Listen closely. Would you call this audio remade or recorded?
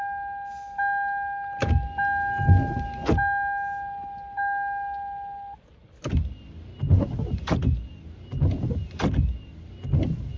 recorded